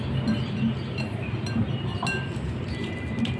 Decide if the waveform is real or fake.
real